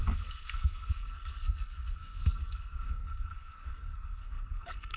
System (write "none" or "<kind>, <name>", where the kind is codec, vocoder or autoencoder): codec, SNAC